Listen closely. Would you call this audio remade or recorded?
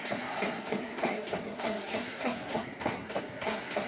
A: remade